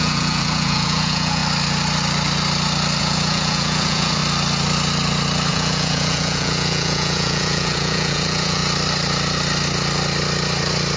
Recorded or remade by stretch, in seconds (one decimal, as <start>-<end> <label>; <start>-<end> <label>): 0.0-1.4 remade; 1.4-3.0 recorded; 3.0-4.2 remade; 4.2-5.5 recorded; 5.5-8.6 remade; 8.6-11.0 recorded